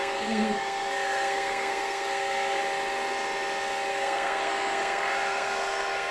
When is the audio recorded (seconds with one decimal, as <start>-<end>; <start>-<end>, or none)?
2.6-3.9